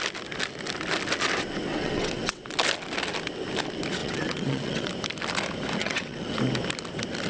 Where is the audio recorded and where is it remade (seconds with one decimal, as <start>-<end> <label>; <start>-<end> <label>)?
0.0-1.7 recorded; 1.7-2.4 remade; 2.4-4.0 recorded; 4.0-4.9 remade; 4.9-5.8 recorded; 5.8-6.3 remade; 6.3-7.3 recorded